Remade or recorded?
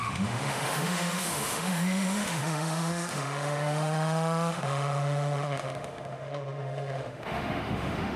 remade